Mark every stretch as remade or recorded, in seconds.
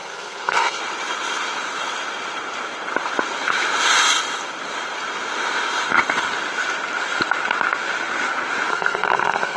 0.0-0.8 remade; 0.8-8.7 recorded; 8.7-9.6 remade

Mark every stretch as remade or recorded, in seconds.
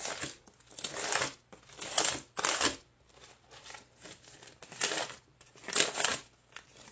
0.0-6.9 recorded